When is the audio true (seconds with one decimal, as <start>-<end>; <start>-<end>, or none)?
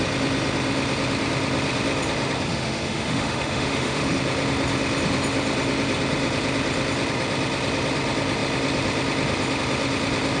0.0-2.5; 4.2-10.4